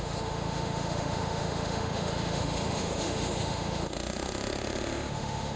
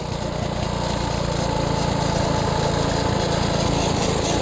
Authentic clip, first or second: second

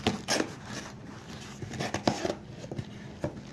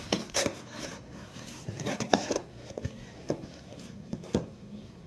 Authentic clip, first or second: first